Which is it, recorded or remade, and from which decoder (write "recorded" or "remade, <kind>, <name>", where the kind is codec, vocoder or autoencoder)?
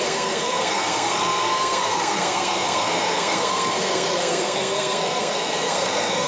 remade, codec, SNAC